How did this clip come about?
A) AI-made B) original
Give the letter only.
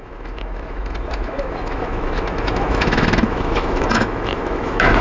A